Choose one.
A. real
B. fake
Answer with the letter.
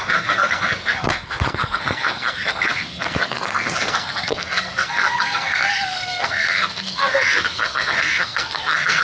B